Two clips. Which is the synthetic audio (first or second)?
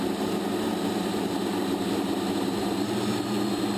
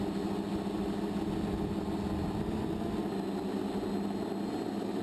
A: first